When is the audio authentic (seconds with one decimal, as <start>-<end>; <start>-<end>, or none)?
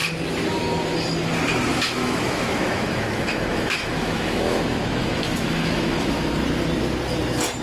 0.0-1.7; 6.3-7.6